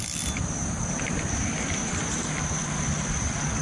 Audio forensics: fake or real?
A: real